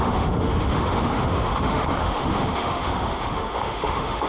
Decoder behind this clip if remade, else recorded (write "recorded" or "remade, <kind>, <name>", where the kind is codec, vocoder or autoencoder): remade, autoencoder, DAC-VAE